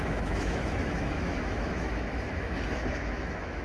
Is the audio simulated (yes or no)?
yes